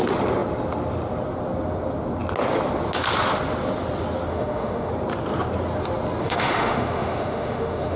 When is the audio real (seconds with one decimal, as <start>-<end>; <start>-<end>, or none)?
0.0-4.3; 4.9-6.2